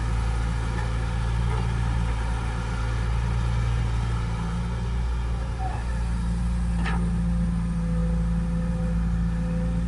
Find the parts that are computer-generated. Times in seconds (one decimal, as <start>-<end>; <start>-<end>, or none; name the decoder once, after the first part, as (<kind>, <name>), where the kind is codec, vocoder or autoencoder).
none